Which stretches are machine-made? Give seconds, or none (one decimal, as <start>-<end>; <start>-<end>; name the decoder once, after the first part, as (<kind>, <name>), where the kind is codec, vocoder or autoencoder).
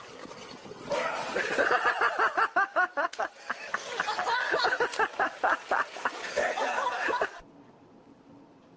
1.2-1.9 (vocoder, WaveNeXt)